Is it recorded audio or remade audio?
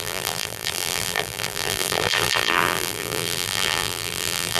remade